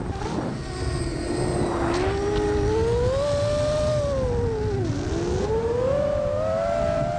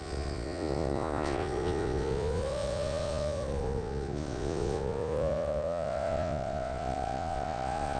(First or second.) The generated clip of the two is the second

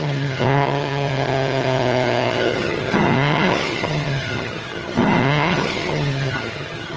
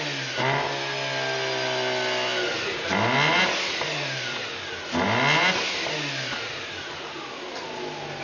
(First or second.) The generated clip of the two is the first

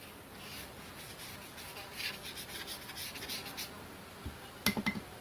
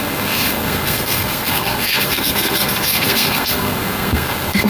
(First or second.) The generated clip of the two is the second